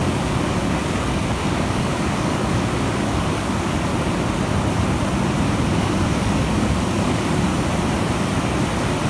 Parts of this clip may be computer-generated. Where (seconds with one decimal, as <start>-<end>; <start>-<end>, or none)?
0.0-3.9; 5.7-7.5